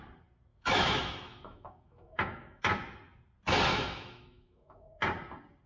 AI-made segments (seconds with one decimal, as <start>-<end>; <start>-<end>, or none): 0.5-2.6; 3.7-5.0

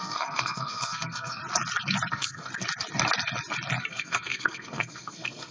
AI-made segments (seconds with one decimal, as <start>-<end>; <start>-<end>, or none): 0.0-1.4; 2.1-2.5; 3.8-5.5

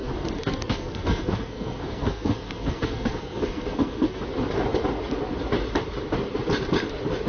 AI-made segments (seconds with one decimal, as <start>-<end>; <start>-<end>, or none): 0.0-4.2

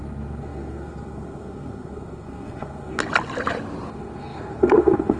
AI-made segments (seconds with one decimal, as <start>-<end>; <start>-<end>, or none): 0.0-3.0; 3.9-5.2

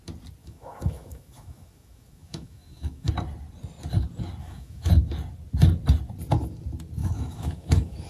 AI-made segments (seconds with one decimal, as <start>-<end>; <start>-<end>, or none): 0.4-3.1; 4.4-4.9; 7.0-8.1

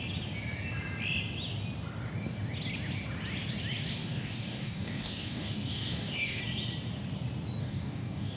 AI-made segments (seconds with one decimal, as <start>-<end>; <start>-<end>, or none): 4.0-6.4; 7.6-8.4

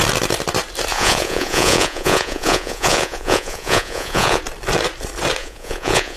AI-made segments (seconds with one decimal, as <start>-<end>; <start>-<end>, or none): 0.9-4.4; 5.4-6.2

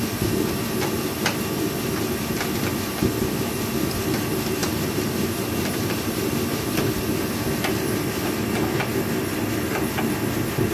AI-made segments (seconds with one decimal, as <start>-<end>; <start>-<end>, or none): 4.6-6.2